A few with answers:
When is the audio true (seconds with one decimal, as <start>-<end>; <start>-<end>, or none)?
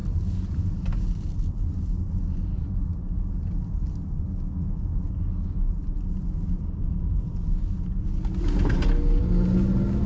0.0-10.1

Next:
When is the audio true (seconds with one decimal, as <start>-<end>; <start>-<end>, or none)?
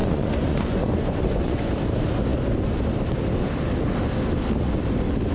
1.7-5.3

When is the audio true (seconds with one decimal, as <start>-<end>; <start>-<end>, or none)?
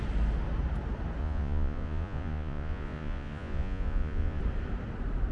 0.0-1.2; 4.4-5.3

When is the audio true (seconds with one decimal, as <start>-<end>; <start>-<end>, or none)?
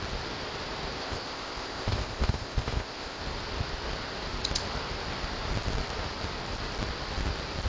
0.0-1.0; 3.2-7.7